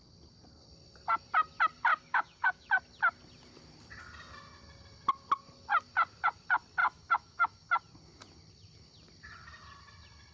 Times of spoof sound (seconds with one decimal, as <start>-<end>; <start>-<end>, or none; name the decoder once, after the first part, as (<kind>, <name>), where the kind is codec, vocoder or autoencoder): 1.9-2.7 (autoencoder, DAC-VAE); 6.8-7.8